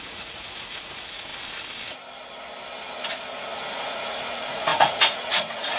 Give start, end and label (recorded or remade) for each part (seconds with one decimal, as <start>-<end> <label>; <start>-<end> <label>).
0.0-1.3 remade; 1.3-3.1 recorded; 3.1-5.8 remade

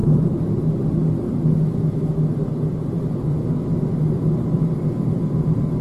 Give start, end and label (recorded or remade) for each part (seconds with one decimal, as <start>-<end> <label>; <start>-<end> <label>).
0.0-3.3 recorded; 3.3-5.8 remade

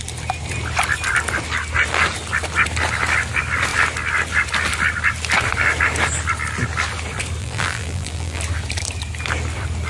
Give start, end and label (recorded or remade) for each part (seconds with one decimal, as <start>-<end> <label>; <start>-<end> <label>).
0.0-7.4 recorded; 7.4-8.4 remade; 8.4-9.9 recorded

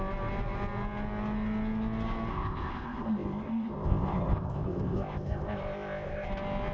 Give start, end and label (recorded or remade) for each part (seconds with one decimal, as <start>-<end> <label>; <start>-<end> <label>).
0.0-2.3 recorded; 2.3-6.3 remade; 6.3-6.7 recorded

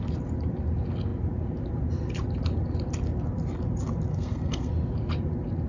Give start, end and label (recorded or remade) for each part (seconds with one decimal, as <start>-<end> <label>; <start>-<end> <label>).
0.0-4.1 recorded; 4.1-4.7 remade; 4.7-5.7 recorded

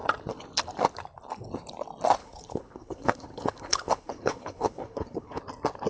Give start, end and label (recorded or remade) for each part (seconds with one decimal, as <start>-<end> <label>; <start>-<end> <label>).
0.0-2.2 recorded; 2.2-5.4 remade; 5.4-5.9 recorded

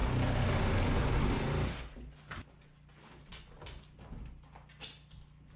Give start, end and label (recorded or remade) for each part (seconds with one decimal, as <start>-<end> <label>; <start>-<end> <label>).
0.0-5.6 recorded